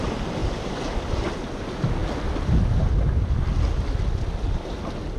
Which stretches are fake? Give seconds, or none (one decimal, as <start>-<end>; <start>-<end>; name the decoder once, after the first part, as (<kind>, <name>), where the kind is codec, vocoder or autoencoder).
0.4-1.0 (codec, DAC)